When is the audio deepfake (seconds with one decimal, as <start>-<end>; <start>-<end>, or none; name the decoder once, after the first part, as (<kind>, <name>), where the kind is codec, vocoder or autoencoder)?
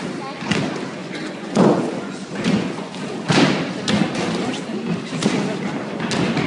1.0-2.9 (vocoder, Vocos)